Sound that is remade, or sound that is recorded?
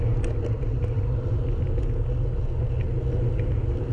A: recorded